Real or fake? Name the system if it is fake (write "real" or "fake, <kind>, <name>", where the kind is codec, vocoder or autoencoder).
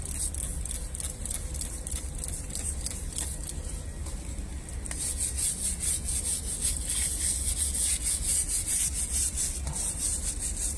real